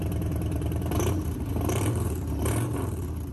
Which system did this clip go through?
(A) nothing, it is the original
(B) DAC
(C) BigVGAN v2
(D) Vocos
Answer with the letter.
C